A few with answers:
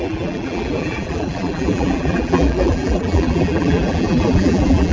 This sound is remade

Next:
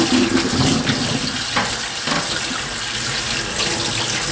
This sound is recorded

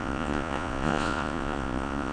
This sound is remade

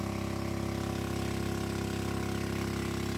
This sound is recorded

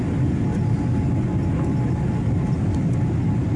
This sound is recorded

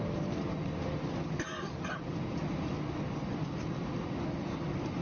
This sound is recorded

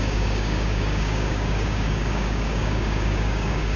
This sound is remade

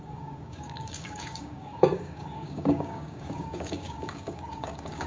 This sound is remade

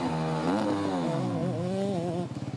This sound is recorded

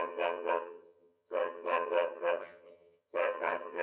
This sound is remade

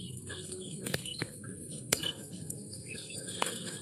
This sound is remade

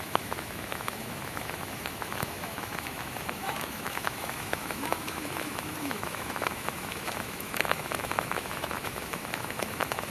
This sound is remade